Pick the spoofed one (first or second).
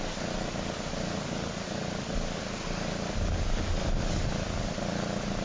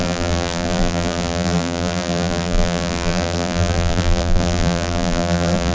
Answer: second